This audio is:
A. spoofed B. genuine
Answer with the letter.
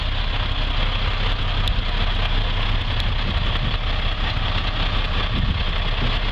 B